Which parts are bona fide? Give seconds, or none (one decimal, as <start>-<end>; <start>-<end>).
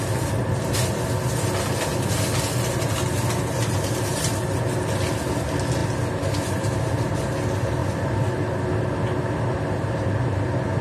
0.0-10.8